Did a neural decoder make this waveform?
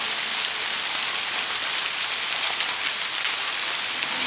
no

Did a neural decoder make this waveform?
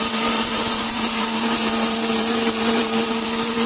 yes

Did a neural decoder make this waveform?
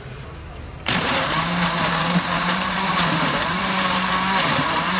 yes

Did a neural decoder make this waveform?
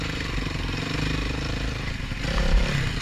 yes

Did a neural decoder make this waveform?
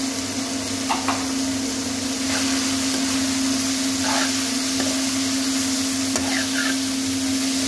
no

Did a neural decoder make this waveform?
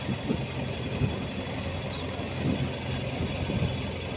no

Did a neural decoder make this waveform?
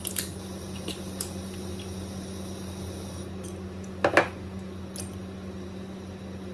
no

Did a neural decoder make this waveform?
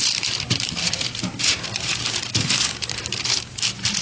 yes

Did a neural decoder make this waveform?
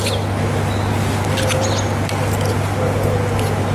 no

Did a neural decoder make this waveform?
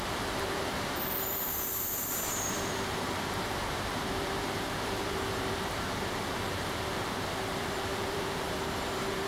yes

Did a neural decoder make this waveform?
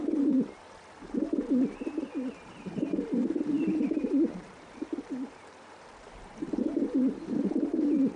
yes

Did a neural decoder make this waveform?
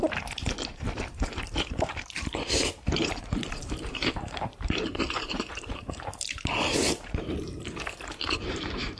yes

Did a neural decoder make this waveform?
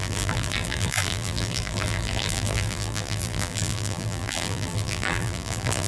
yes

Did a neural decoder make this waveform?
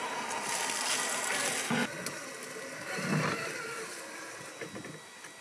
no